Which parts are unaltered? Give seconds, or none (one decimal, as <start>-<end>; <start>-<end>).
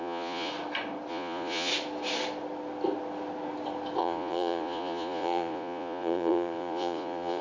0.5-1.1; 1.7-4.0